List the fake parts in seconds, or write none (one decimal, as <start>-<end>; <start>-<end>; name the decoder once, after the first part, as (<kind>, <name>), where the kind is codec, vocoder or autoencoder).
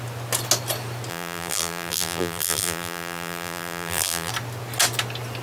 1.1-4.3 (vocoder, BigVGAN v2)